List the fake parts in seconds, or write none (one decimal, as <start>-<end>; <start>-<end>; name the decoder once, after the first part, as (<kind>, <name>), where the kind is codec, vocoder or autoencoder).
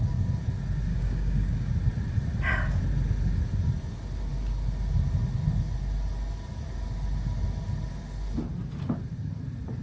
0.9-1.7 (codec, DAC)